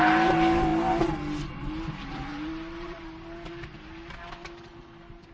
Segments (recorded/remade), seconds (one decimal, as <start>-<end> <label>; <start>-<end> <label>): 0.0-2.3 recorded; 2.3-3.0 remade; 3.0-5.3 recorded